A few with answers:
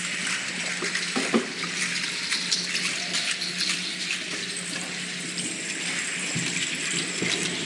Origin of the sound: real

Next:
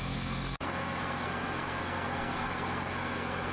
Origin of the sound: fake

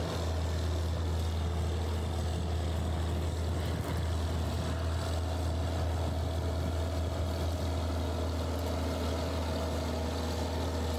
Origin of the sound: real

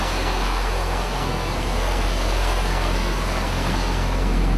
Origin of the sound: fake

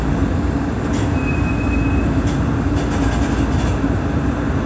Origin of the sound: real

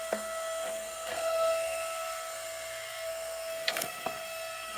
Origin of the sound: fake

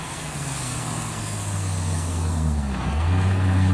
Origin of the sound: fake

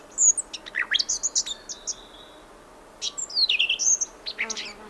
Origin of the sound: real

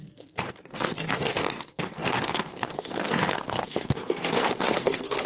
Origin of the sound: fake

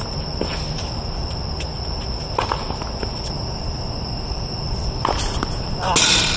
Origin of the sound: real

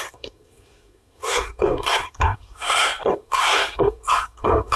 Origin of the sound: fake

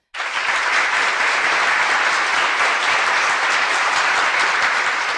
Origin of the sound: real